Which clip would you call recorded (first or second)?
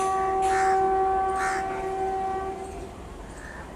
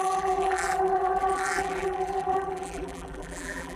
first